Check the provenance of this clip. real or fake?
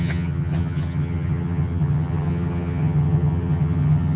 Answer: fake